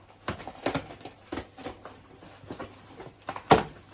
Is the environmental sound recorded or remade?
recorded